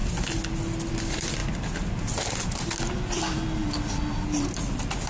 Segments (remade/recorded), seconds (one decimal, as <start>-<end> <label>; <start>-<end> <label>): 0.0-0.9 recorded; 0.9-1.4 remade; 1.4-3.0 recorded; 3.0-3.6 remade; 3.6-4.5 recorded; 4.5-5.1 remade